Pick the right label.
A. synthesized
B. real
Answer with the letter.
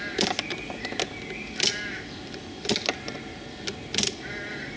B